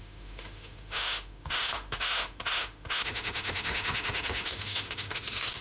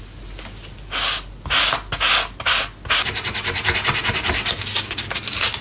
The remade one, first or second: first